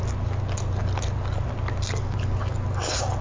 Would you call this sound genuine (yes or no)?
yes